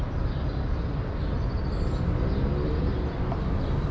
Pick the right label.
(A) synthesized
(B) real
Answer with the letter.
B